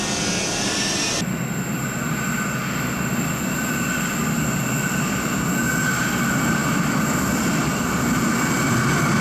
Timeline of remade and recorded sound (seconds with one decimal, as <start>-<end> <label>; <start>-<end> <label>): 0.0-9.2 recorded